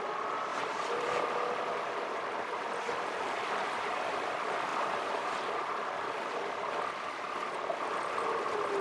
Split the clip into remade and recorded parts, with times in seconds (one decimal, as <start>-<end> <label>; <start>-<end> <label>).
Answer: 0.0-0.5 recorded; 0.5-1.2 remade; 1.2-4.7 recorded; 4.7-5.5 remade; 5.5-8.8 recorded